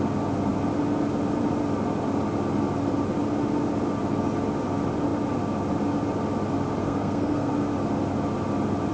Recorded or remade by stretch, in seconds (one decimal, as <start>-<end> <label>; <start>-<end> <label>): 0.0-6.8 recorded; 6.8-7.5 remade; 7.5-8.9 recorded